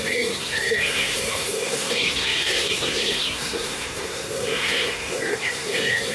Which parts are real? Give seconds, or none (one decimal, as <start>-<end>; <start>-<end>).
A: none